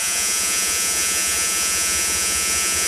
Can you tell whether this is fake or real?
fake